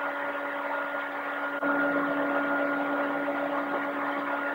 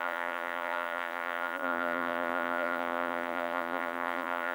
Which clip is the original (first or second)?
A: first